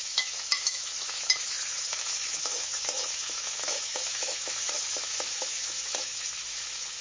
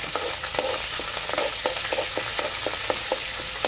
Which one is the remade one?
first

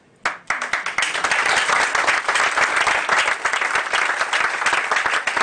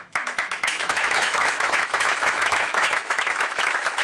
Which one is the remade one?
second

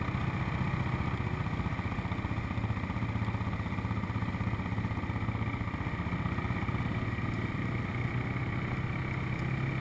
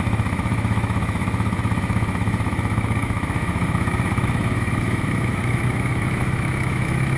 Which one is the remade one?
second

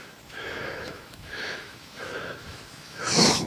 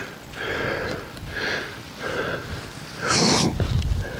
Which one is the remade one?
first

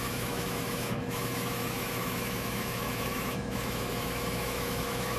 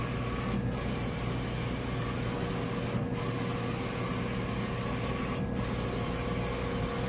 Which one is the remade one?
first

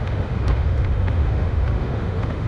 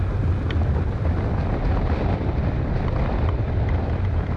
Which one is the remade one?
first